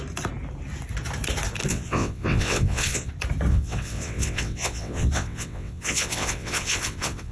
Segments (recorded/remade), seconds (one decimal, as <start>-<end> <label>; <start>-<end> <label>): 0.0-1.7 recorded; 1.7-3.1 remade; 3.1-3.5 recorded; 3.5-7.3 remade